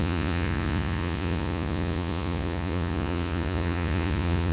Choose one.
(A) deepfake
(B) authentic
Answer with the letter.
A